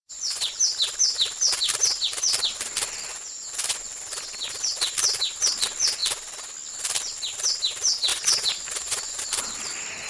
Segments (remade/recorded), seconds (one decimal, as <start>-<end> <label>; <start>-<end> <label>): 0.0-0.6 remade; 0.6-3.1 recorded; 3.1-4.0 remade; 4.0-8.1 recorded; 8.1-9.2 remade; 9.2-10.1 recorded

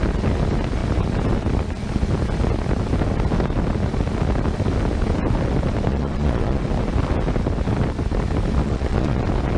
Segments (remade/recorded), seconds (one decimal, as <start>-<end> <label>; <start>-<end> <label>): 0.0-5.9 recorded; 5.9-6.6 remade; 6.6-8.6 recorded; 8.6-9.2 remade; 9.2-9.6 recorded

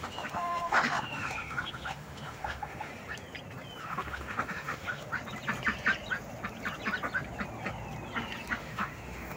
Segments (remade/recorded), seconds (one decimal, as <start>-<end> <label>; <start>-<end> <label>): 0.0-2.9 remade; 2.9-3.8 recorded; 3.8-5.1 remade; 5.1-8.6 recorded; 8.6-9.4 remade

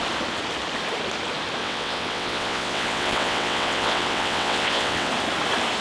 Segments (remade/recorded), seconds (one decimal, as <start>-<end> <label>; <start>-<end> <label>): 0.0-1.6 recorded; 1.6-5.1 remade; 5.1-5.8 recorded

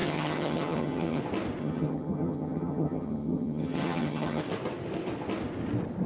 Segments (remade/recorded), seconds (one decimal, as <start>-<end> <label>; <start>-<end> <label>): 0.0-1.2 remade; 1.2-1.6 recorded; 1.6-4.4 remade; 4.4-6.1 recorded

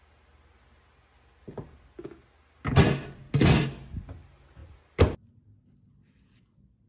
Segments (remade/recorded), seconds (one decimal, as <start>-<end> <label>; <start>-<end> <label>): 0.0-6.9 recorded

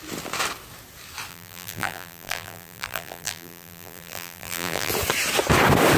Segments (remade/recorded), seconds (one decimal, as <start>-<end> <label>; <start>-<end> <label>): 0.0-1.3 recorded; 1.3-4.9 remade; 4.9-6.0 recorded